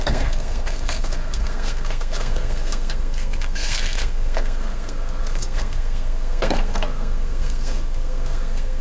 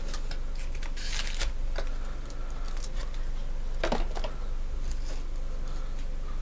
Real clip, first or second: second